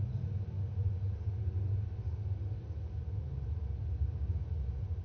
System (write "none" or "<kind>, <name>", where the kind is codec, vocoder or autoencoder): none